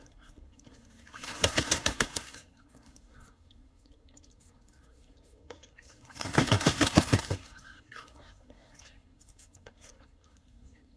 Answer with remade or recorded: remade